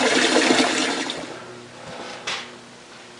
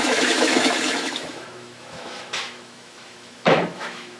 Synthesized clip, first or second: second